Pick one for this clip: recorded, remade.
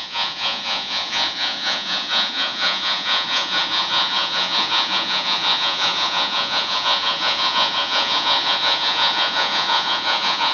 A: remade